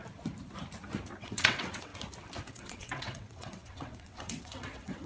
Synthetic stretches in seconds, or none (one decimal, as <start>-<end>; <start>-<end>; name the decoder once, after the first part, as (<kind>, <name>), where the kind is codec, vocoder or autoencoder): 1.2-1.9 (vocoder, WaveNeXt); 2.5-5.1